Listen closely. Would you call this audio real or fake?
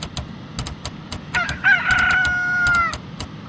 real